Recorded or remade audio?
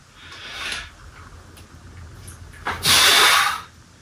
recorded